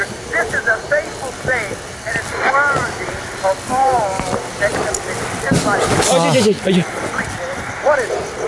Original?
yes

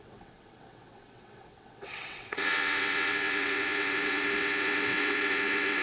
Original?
no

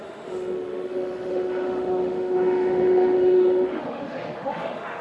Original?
no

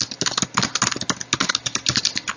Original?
yes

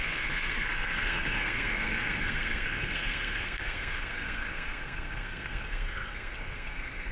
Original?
no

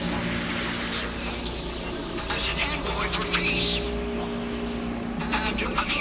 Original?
yes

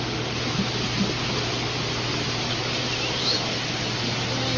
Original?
yes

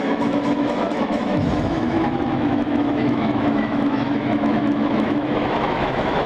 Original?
no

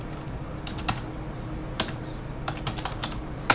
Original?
yes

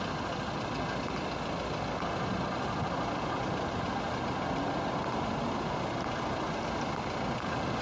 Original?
yes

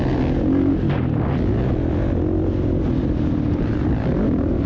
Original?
yes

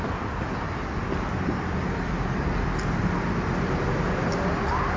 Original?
yes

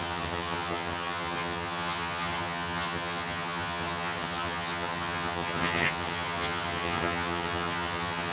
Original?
no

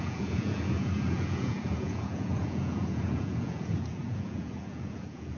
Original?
no